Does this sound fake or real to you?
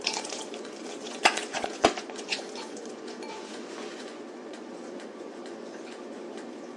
fake